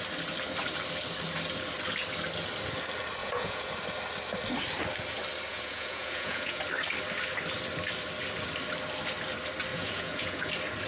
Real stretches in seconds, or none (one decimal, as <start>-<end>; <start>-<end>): 0.0-3.2; 3.7-5.5; 6.6-9.7; 10.5-10.9